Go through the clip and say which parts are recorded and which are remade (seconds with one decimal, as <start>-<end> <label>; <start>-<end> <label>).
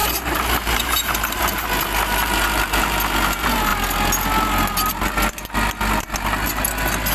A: 0.0-3.7 remade; 3.7-7.1 recorded